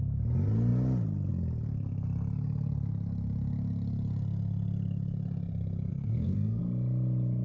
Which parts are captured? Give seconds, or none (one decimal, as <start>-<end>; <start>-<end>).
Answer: 0.0-5.9; 6.6-7.4

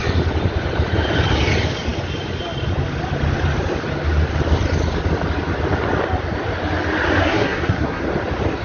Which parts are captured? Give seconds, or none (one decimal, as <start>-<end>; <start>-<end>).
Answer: 0.0-7.2; 8.0-8.6

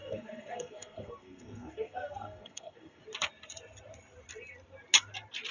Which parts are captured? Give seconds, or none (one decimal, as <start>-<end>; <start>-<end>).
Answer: 3.0-5.5